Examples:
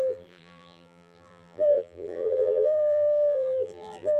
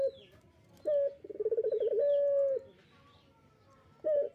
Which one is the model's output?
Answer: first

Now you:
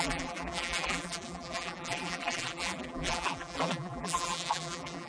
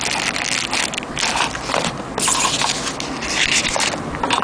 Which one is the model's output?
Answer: first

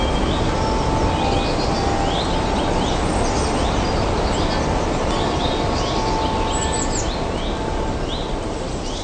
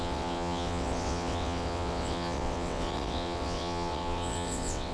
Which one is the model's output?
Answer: second